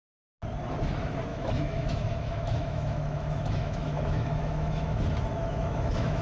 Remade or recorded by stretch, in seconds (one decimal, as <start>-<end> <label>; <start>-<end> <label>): 0.0-1.3 recorded; 1.3-5.0 remade; 5.0-5.4 recorded; 5.4-6.2 remade